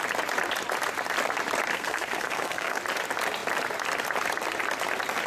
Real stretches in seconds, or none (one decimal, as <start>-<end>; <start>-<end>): 0.0-1.7; 2.8-5.3